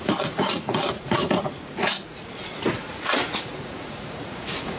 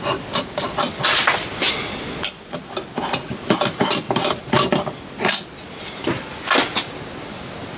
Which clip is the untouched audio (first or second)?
second